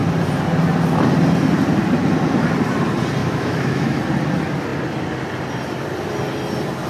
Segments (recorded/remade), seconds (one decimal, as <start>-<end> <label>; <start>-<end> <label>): 0.0-3.2 recorded; 3.2-4.0 remade; 4.0-6.9 recorded